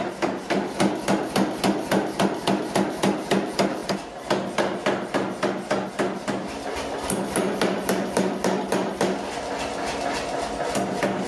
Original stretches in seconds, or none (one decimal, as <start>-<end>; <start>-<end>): 0.0-11.3